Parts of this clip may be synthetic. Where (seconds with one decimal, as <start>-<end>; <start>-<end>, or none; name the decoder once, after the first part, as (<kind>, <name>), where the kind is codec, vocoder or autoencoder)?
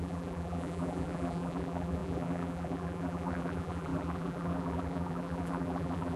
0.0-6.2 (vocoder, BigVGAN v2)